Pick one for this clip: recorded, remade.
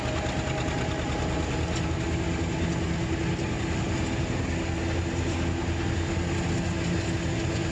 recorded